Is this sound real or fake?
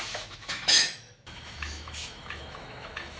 fake